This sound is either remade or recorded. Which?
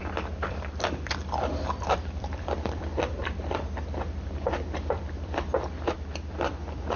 remade